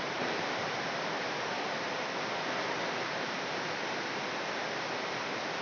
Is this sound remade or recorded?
recorded